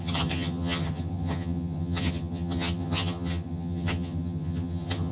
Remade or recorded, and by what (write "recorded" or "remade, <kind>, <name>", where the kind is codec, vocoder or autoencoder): remade, vocoder, HiFi-GAN